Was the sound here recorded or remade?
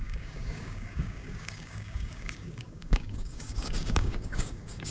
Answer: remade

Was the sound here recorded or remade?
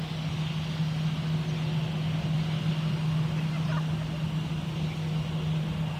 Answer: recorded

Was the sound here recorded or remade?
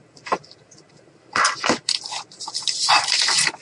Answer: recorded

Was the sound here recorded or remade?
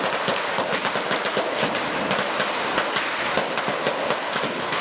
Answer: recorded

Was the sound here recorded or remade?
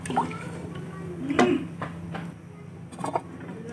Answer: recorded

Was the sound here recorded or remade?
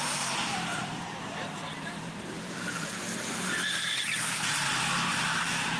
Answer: remade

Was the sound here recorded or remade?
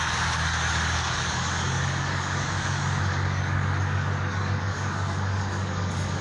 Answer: remade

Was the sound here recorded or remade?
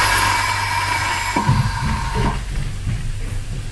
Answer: recorded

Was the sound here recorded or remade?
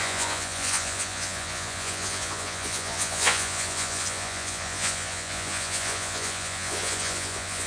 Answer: remade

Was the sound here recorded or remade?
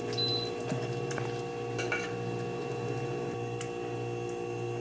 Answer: recorded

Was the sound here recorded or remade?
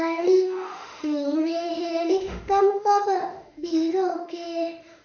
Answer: remade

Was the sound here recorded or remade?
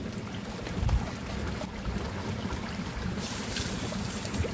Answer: recorded